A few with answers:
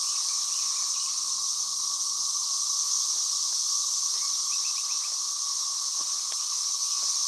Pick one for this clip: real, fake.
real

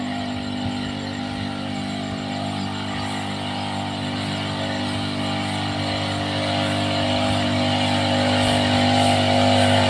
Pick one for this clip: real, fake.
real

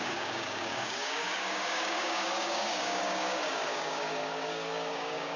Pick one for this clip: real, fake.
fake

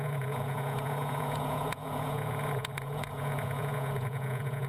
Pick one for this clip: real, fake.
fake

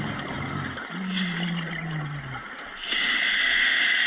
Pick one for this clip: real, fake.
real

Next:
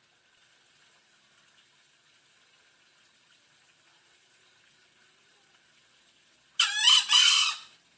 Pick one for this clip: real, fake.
real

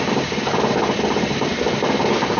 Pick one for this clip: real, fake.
real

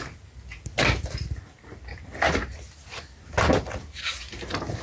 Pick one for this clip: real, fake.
real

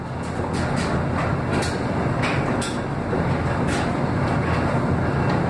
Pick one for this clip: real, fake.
real